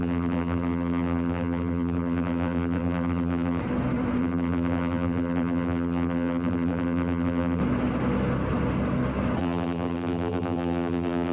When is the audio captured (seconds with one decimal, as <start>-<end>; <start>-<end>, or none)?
3.6-4.2; 7.6-9.4

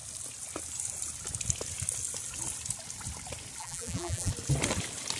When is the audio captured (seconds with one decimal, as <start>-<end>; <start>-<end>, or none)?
0.0-3.6; 4.3-5.2